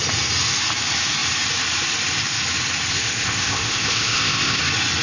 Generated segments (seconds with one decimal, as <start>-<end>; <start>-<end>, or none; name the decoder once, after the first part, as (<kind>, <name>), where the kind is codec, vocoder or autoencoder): 2.9-4.6 (codec, ZipCodec)